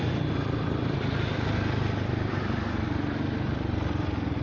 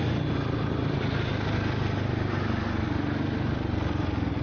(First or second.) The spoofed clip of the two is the first